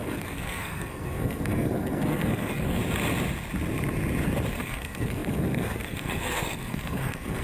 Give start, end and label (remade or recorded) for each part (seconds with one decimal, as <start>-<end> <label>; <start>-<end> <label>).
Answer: 0.0-2.8 remade; 2.8-4.5 recorded; 4.5-7.4 remade